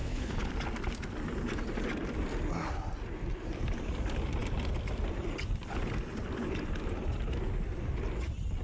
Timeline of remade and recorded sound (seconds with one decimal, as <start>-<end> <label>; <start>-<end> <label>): 0.0-0.5 remade; 0.5-8.6 recorded